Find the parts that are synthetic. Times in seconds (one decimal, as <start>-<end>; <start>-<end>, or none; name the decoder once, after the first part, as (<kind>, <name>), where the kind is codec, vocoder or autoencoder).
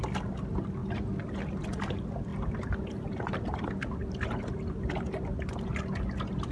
none